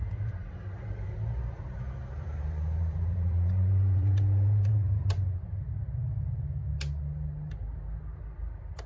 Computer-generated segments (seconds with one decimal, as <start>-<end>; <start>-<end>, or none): 0.0-5.1